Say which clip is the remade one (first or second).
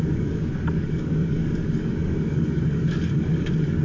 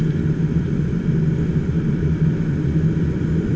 first